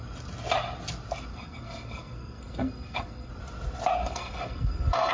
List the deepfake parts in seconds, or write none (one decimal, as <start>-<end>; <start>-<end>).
1.3-3.3; 4.0-5.1